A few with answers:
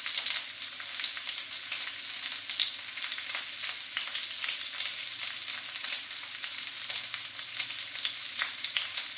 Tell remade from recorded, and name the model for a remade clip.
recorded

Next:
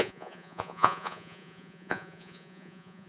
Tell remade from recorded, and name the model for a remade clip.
remade, vocoder, Vocos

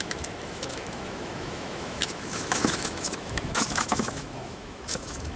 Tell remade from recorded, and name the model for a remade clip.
remade, autoencoder, DAC-VAE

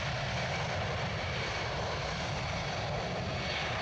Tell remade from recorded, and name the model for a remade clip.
remade, vocoder, BigVGAN v2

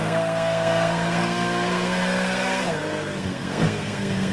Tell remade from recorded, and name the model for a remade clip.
remade, codec, SNAC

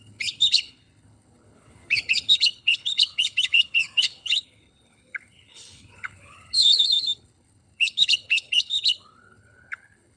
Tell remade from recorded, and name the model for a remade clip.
remade, codec, HILCodec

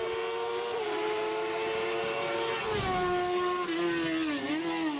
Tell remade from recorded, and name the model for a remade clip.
recorded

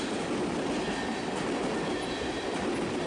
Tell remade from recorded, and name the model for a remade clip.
recorded